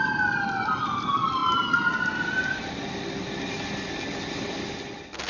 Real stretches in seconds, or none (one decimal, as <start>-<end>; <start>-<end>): 0.0-5.3